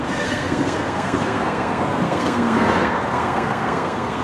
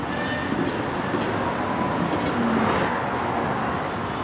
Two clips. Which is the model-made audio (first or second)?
first